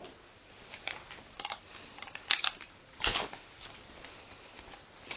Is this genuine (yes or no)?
yes